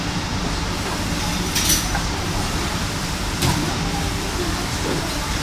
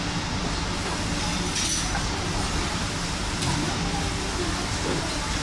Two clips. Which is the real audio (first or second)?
second